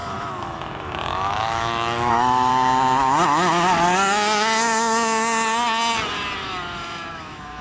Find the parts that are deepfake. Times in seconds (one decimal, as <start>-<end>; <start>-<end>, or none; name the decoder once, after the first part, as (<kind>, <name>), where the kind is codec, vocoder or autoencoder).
0.0-2.5 (autoencoder, DAC-VAE); 7.1-7.6